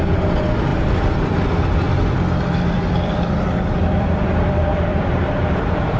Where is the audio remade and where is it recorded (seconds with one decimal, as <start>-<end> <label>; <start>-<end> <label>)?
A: 0.0-4.7 recorded; 4.7-6.0 remade